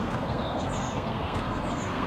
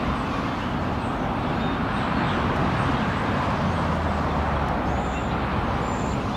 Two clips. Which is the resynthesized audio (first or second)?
first